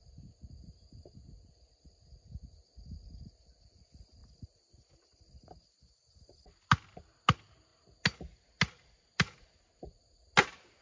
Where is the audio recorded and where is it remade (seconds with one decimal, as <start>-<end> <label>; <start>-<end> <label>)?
0.0-10.8 recorded